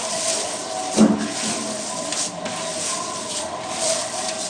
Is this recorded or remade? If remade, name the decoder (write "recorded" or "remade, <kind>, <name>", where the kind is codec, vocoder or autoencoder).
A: recorded